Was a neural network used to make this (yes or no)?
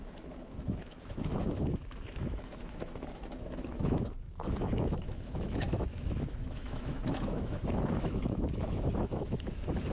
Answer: yes